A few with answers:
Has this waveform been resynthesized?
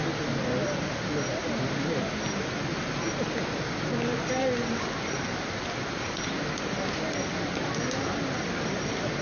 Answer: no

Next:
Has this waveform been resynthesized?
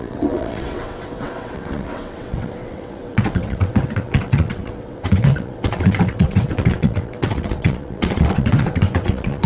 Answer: yes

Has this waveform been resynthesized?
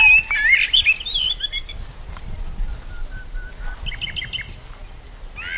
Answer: no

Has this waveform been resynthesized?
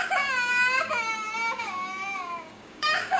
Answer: yes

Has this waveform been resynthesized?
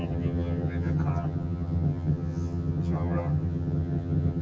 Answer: yes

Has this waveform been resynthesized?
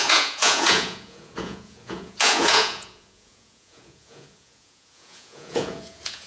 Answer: yes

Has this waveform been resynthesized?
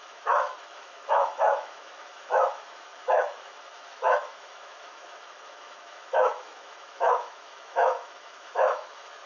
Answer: yes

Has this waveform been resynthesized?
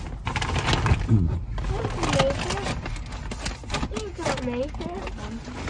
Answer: no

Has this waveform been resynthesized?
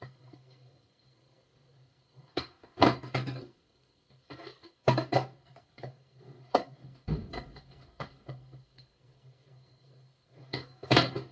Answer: yes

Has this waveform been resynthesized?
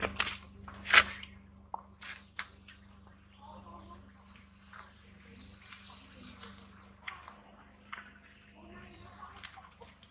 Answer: no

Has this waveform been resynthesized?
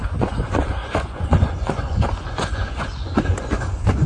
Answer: yes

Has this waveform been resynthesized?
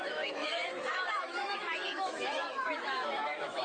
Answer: yes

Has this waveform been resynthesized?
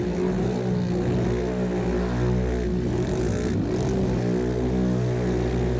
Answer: no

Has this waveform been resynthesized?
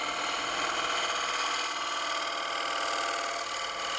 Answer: no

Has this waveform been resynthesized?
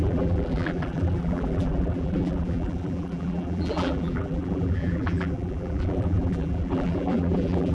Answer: yes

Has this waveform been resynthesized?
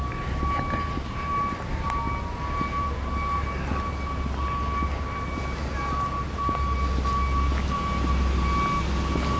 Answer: no